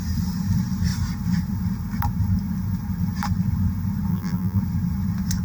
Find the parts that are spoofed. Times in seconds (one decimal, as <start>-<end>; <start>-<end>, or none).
4.1-4.6